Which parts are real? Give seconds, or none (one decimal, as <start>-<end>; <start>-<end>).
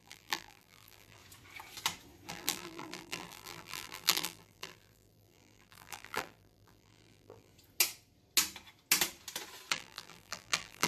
1.2-2.3; 7.5-9.7